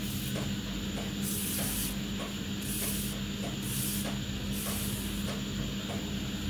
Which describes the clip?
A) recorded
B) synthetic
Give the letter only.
A